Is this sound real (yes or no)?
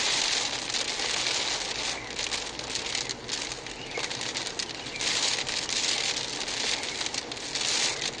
yes